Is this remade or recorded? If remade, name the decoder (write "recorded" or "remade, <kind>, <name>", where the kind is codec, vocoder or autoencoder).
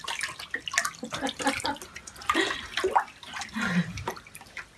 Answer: recorded